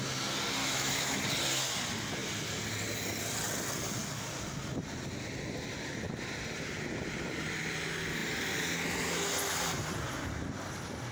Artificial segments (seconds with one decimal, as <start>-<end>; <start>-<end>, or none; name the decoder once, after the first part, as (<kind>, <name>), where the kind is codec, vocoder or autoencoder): 0.6-1.2 (autoencoder, DAC-VAE)